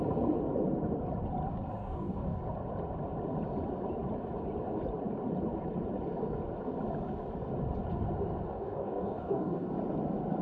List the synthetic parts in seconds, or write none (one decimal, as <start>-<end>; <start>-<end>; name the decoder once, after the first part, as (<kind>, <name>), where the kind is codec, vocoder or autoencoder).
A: 1.8-2.4 (codec, DAC); 8.5-9.7